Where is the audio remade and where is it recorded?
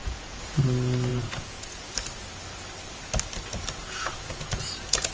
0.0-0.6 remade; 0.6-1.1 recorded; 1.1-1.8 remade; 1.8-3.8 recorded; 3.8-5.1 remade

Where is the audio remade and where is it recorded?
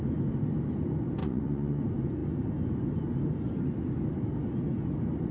0.0-1.2 recorded; 1.2-1.8 remade; 1.8-5.3 recorded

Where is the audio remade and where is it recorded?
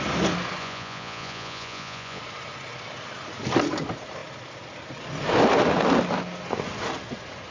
0.0-0.6 recorded; 0.6-2.2 remade; 2.2-7.5 recorded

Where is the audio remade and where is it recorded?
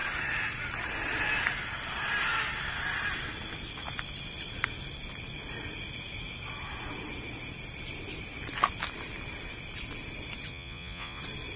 0.0-10.5 recorded; 10.5-11.2 remade; 11.2-11.6 recorded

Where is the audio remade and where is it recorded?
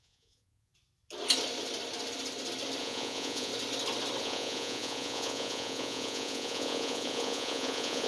0.0-0.7 remade; 0.7-2.8 recorded; 2.8-3.5 remade; 3.5-4.2 recorded; 4.2-8.1 remade